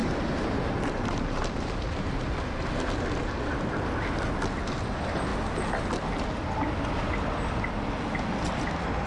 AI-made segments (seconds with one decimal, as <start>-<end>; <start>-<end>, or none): 0.0-2.3